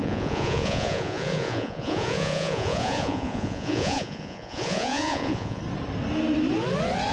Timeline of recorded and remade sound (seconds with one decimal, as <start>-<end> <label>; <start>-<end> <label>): 0.0-5.6 remade; 5.6-7.1 recorded